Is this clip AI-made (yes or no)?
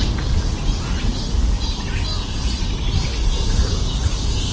no